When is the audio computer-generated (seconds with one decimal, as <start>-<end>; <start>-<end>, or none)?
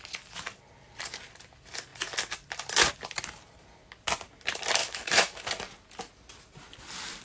4.8-5.4